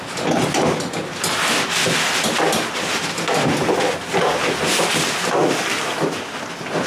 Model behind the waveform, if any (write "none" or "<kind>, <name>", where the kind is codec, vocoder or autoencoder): none